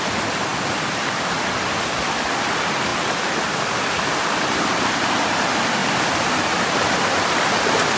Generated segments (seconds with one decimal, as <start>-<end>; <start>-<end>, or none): 5.8-6.7